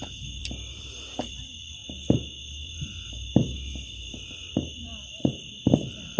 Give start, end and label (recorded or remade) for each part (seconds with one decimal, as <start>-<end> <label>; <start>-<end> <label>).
0.0-1.8 remade; 1.8-4.4 recorded; 4.4-6.2 remade